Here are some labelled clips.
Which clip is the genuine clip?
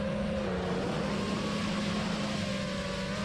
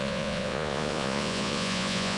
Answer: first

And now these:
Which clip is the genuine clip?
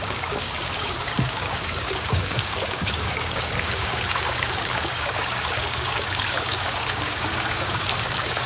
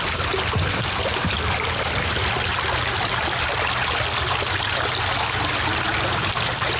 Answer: second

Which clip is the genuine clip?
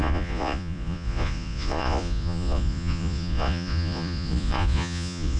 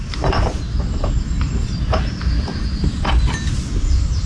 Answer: second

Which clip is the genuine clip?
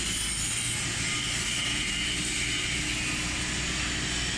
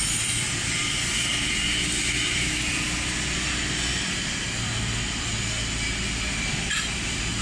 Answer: first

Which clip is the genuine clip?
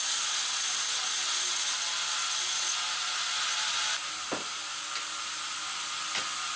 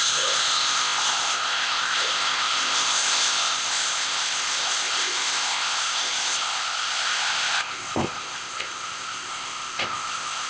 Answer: first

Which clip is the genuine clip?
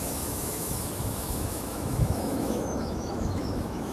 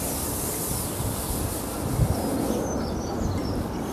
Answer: second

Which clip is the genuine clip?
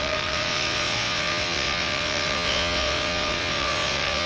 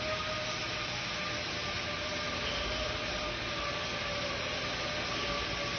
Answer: second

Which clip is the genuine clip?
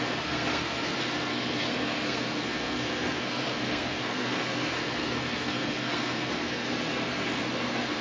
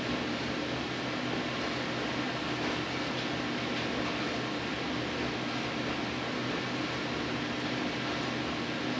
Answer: second